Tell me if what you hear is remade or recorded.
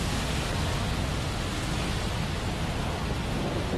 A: recorded